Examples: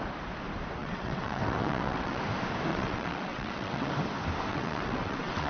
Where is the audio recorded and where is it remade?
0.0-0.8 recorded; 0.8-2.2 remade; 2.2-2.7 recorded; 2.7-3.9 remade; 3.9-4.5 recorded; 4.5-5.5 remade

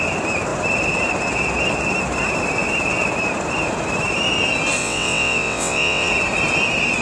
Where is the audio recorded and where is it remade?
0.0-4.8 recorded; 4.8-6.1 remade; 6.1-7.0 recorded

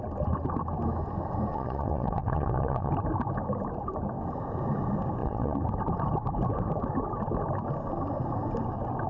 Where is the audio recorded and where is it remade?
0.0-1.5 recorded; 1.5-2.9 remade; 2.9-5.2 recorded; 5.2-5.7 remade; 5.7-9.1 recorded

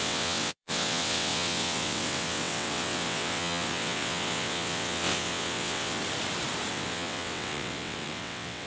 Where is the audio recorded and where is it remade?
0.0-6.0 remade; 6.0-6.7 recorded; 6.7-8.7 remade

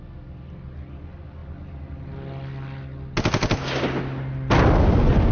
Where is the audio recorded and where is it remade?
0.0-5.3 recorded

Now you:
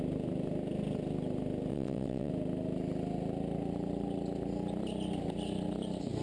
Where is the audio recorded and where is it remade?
0.0-1.7 recorded; 1.7-2.3 remade; 2.3-6.2 recorded